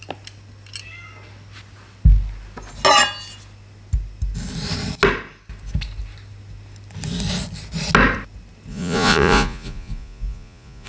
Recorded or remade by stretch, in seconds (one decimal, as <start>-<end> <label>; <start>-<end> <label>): 0.0-8.7 recorded; 8.7-10.9 remade